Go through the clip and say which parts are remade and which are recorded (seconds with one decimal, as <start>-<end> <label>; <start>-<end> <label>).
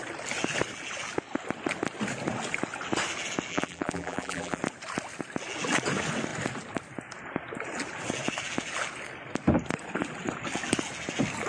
0.0-3.5 recorded; 3.5-4.6 remade; 4.6-11.5 recorded